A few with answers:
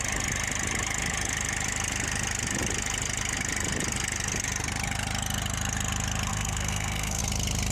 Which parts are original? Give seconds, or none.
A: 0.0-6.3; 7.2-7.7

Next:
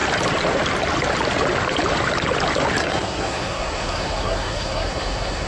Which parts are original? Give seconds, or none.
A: 0.0-2.8

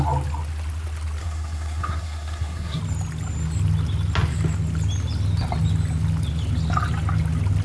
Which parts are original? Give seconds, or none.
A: 0.0-1.2; 2.8-7.6

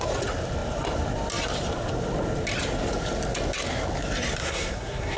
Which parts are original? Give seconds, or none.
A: 0.0-4.4

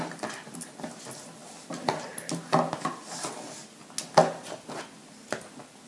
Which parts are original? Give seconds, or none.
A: 0.0-5.9